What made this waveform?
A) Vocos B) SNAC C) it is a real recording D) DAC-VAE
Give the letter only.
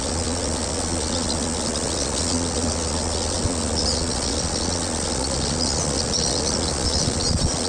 A